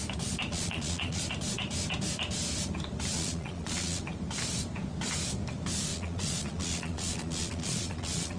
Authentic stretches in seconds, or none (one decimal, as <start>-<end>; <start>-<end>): 0.0-0.5; 1.2-3.1; 4.0-5.9